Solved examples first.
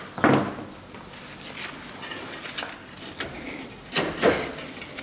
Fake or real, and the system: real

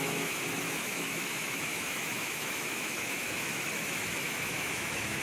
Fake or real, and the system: fake, autoencoder, DAC-VAE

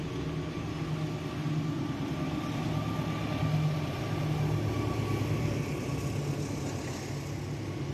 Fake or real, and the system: real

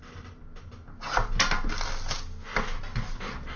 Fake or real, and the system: real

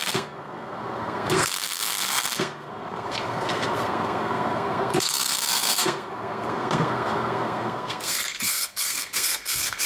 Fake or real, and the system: fake, codec, SNAC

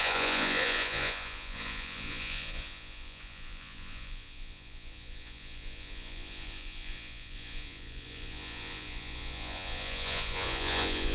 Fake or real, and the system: fake, vocoder, Vocos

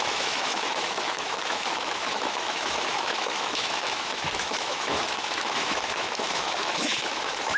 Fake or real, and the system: fake, autoencoder, DAC-VAE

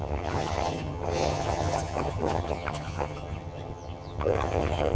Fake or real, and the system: fake, vocoder, HiFi-GAN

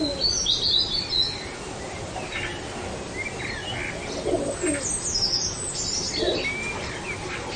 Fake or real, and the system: real